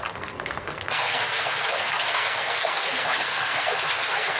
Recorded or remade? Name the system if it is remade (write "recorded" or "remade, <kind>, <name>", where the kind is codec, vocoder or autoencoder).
remade, codec, SNAC